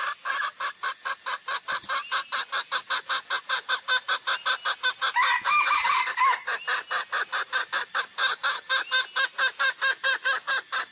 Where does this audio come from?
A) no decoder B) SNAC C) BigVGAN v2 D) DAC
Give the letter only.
A